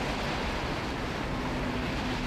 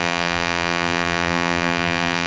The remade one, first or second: second